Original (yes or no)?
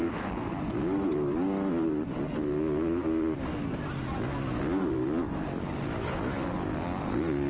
yes